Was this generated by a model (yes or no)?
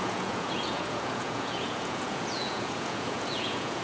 yes